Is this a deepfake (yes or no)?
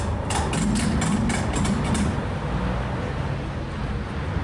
no